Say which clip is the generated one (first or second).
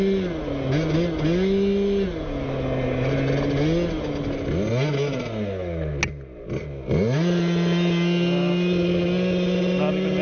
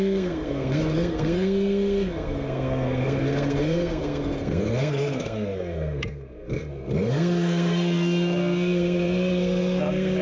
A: second